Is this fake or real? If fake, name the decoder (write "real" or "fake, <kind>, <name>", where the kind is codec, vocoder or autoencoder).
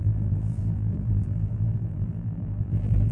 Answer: fake, vocoder, BigVGAN v2